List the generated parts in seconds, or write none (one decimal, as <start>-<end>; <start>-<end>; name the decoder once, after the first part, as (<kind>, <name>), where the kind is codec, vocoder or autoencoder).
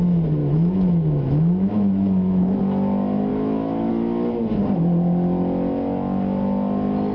0.4-2.6 (autoencoder, DAC-VAE); 3.3-3.9